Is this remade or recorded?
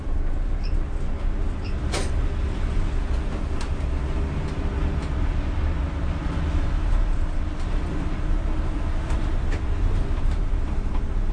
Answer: recorded